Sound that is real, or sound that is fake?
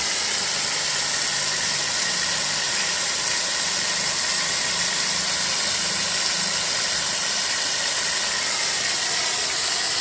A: real